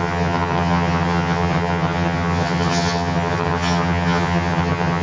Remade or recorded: remade